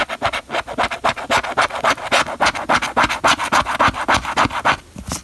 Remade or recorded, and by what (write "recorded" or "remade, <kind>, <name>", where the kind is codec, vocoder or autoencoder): recorded